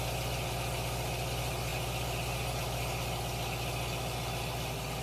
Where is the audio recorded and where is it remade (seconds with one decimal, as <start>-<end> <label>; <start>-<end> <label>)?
0.0-5.0 recorded